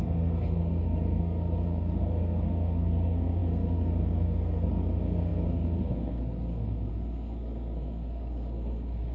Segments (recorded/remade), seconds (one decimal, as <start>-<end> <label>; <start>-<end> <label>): 0.0-9.1 remade